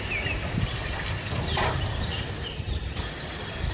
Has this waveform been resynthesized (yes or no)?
no